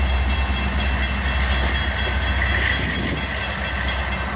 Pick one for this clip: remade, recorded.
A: recorded